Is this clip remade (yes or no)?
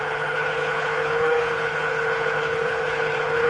yes